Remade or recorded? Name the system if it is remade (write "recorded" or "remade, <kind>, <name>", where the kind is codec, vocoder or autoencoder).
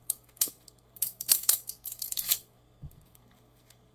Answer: remade, codec, SNAC